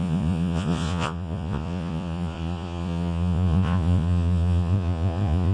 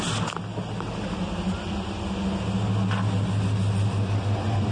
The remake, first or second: first